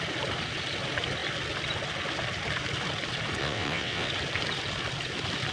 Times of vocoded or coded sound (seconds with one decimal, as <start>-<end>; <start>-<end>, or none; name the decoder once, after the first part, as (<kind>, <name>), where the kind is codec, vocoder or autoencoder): 3.4-4.1 (vocoder, WaveNeXt)